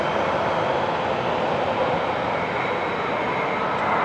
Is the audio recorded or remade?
recorded